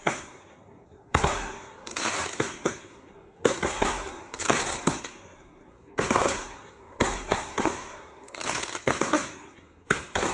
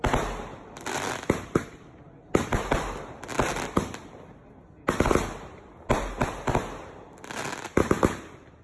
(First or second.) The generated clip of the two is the first